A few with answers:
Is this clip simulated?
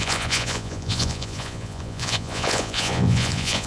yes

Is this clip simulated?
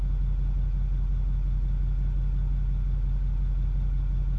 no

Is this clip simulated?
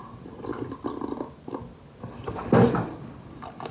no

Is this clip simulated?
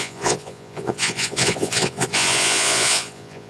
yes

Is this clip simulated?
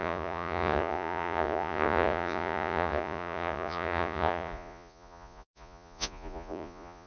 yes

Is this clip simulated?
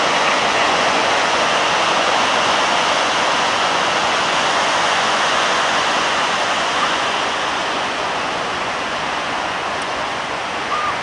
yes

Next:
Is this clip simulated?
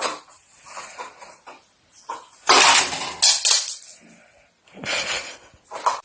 no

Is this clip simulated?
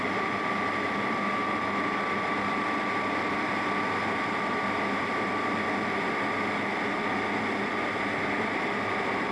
no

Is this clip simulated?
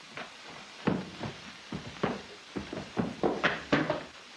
no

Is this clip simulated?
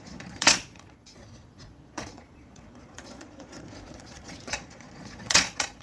yes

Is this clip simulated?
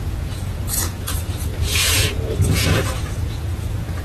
yes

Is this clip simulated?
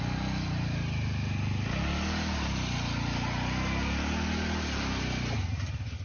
no